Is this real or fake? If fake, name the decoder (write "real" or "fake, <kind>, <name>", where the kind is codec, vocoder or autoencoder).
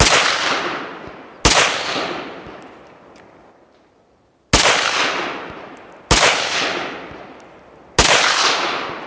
real